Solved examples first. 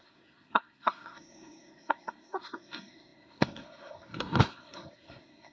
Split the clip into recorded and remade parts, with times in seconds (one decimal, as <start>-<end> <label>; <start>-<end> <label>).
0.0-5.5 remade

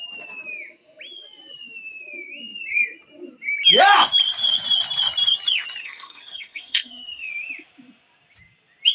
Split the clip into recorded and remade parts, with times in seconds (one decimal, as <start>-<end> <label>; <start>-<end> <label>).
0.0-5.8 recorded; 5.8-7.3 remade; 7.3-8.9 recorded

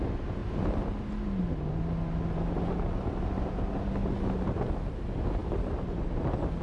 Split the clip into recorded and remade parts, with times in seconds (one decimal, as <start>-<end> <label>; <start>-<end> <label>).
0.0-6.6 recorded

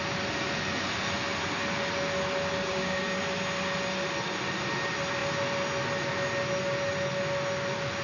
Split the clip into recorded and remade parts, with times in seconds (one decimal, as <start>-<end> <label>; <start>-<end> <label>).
0.0-2.7 recorded; 2.7-3.2 remade; 3.2-8.0 recorded

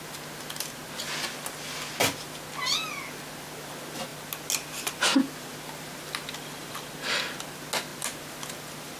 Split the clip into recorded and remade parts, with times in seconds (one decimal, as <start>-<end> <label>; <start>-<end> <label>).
0.0-9.0 recorded

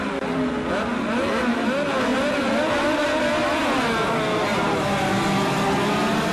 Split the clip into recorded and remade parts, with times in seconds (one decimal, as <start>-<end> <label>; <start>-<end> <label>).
0.0-2.1 recorded; 2.1-2.6 remade; 2.6-4.5 recorded; 4.5-5.1 remade; 5.1-6.3 recorded

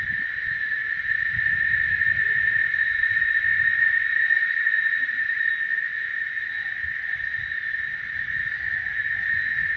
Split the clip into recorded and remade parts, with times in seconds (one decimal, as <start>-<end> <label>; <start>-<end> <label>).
0.0-3.5 recorded; 3.5-5.5 remade; 5.5-9.8 recorded